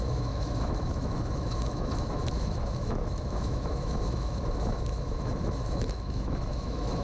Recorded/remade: remade